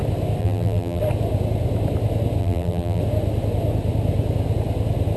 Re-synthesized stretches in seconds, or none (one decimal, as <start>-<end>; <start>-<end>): 0.4-1.0; 2.4-3.0